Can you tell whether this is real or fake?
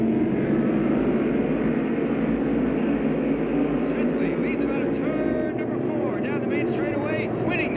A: real